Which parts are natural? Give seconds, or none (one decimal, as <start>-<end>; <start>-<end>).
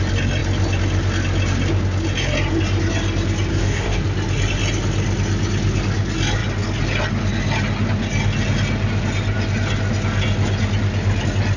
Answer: 0.0-3.5; 4.0-11.6